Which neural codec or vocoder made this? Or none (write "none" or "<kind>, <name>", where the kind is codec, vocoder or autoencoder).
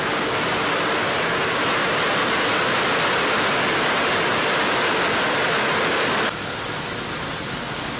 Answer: none